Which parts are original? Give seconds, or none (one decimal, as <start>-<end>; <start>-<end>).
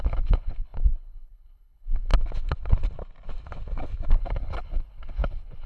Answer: 2.1-4.1